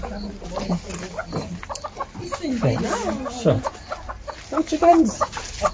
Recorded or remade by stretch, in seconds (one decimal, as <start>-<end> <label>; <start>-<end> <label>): 0.0-5.7 recorded